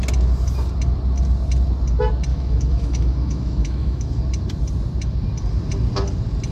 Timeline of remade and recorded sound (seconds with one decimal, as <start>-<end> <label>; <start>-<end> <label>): 0.0-2.3 recorded; 2.3-4.2 remade; 4.2-6.5 recorded